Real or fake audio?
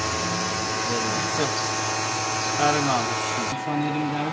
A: real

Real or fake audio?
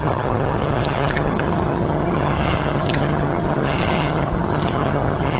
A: fake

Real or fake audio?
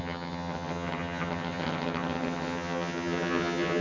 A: fake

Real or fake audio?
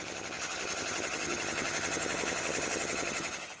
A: fake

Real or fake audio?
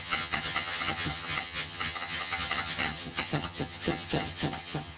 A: fake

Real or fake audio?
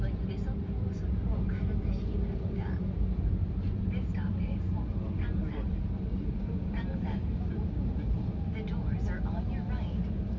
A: real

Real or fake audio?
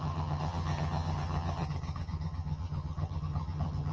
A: fake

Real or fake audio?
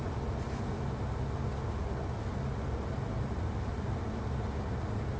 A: real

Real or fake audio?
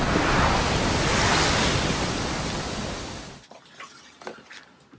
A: real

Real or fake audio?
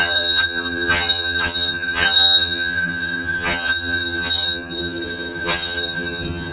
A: fake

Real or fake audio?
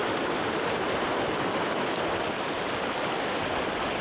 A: real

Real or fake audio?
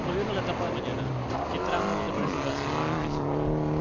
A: real